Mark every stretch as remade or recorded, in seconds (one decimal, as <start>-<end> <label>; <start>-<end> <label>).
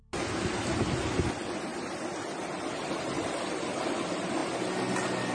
0.0-5.3 recorded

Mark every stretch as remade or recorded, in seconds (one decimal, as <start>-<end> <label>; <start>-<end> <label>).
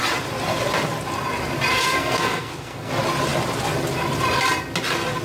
0.0-1.7 recorded; 1.7-2.9 remade; 2.9-5.2 recorded